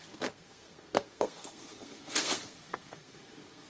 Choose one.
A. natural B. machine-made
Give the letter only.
B